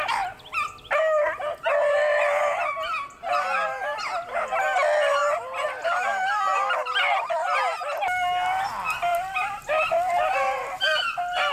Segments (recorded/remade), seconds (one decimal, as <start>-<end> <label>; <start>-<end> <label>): 0.0-9.1 recorded; 9.1-9.6 remade; 9.6-11.5 recorded